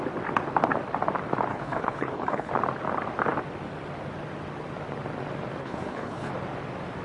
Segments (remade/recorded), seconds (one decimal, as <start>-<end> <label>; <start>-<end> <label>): 0.0-1.5 recorded; 1.5-2.5 remade; 2.5-5.6 recorded; 5.6-6.3 remade; 6.3-7.0 recorded